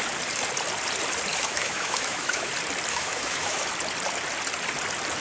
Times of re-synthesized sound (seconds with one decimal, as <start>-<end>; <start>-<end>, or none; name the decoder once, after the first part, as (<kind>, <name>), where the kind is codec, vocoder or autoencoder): 1.3-2.5 (autoencoder, DAC-VAE); 2.9-3.7